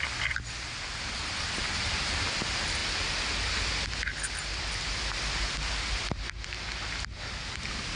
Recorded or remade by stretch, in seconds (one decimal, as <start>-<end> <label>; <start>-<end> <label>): 0.0-1.6 recorded; 1.6-2.1 remade; 2.1-8.0 recorded